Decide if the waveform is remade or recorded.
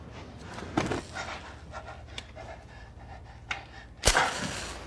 recorded